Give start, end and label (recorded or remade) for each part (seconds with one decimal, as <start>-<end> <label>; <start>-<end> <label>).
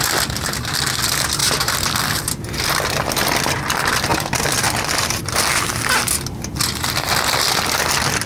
0.0-8.3 recorded